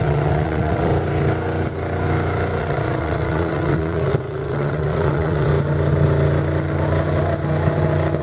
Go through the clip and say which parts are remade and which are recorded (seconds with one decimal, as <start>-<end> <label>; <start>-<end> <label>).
0.0-0.9 remade; 0.9-2.6 recorded; 2.6-5.5 remade; 5.5-8.2 recorded

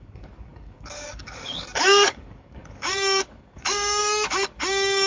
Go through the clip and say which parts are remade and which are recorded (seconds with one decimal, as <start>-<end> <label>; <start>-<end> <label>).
0.0-5.1 remade